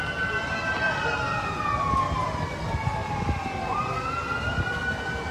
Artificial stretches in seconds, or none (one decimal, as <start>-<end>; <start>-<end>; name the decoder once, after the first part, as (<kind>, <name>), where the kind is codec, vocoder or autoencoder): none